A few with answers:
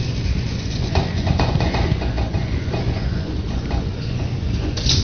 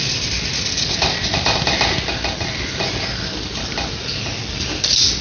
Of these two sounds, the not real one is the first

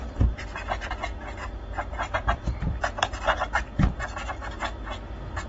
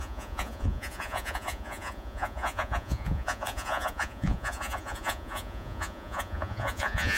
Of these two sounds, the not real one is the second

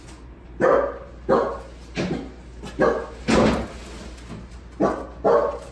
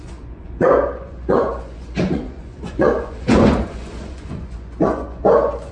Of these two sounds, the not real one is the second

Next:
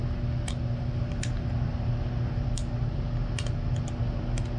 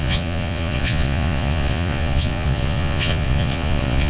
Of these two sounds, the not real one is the second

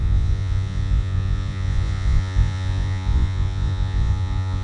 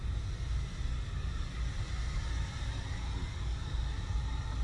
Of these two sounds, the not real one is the first